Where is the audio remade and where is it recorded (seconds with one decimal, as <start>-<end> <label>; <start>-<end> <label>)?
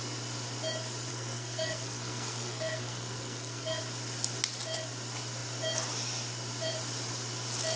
0.0-1.1 recorded; 1.1-3.8 remade; 3.8-7.8 recorded